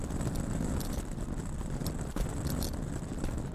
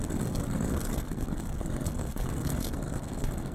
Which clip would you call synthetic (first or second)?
second